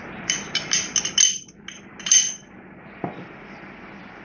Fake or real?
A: real